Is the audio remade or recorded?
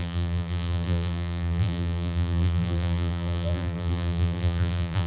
remade